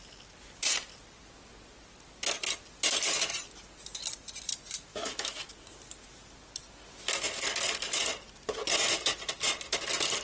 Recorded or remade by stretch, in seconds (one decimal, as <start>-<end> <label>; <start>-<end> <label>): 0.0-4.9 recorded; 4.9-5.5 remade; 5.5-10.2 recorded